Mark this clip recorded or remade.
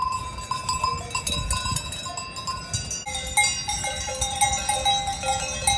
recorded